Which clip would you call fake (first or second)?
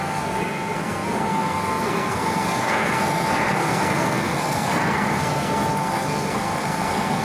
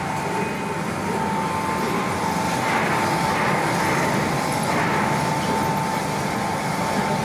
first